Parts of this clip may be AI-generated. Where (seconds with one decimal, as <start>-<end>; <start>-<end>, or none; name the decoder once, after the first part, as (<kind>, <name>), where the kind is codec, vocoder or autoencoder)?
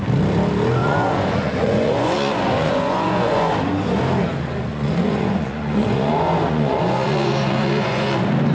0.8-3.5 (vocoder, Vocos); 4.7-8.1